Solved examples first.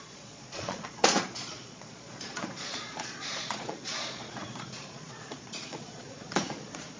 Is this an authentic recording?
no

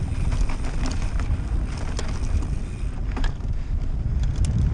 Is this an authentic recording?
yes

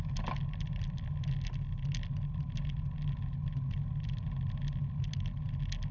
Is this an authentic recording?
yes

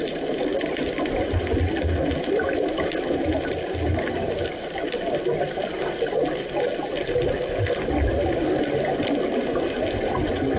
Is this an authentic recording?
yes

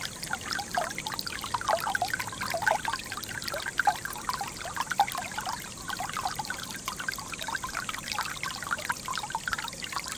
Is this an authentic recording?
yes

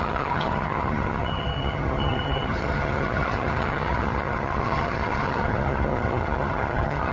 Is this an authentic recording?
no